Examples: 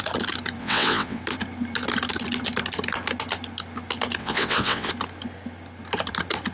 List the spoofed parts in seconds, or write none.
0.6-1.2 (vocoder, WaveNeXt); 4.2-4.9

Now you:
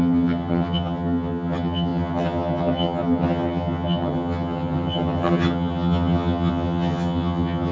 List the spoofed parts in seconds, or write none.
0.0-7.7 (vocoder, HiFi-GAN)

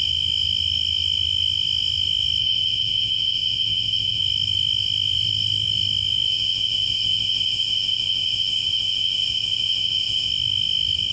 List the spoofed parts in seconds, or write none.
2.4-4.2 (codec, ZipCodec); 6.3-10.3

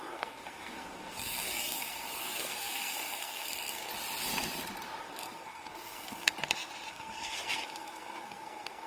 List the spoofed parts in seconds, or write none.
0.0-3.9 (codec, SNAC); 5.0-6.3; 6.9-8.9

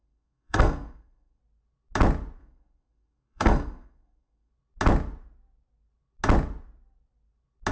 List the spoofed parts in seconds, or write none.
0.0-1.4 (codec, SNAC); 2.4-4.5

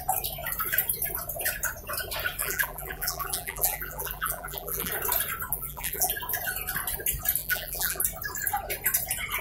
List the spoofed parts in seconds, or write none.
2.4-4.9 (vocoder, BigVGAN v2); 5.5-6.1; 7.4-8.0

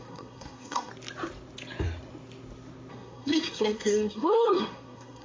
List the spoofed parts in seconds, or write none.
0.0-0.9 (codec, SNAC); 2.9-5.2

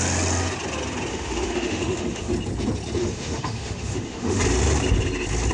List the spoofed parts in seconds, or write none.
1.1-2.3 (autoencoder, DAC-VAE); 3.0-4.4